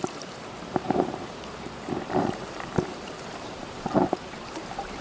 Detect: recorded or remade remade